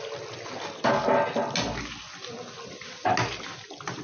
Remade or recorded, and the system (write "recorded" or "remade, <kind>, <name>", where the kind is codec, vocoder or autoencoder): recorded